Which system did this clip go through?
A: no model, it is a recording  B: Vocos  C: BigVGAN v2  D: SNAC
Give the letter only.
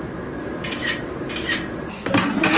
A